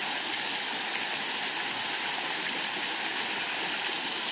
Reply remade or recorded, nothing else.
recorded